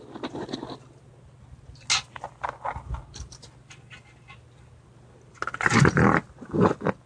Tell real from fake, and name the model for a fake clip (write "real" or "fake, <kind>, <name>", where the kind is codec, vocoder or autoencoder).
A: real